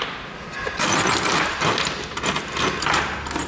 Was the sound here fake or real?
real